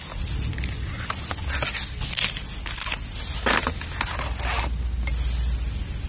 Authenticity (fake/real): real